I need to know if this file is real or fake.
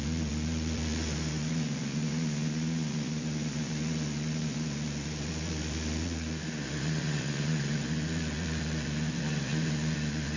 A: fake